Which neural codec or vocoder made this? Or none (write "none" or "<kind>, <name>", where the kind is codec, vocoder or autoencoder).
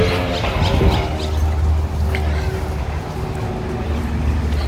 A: none